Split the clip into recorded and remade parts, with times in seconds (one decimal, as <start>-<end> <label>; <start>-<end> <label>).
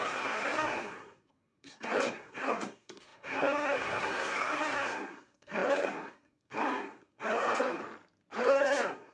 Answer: 0.0-7.8 remade; 7.8-8.4 recorded; 8.4-9.1 remade